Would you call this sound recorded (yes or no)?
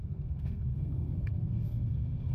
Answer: no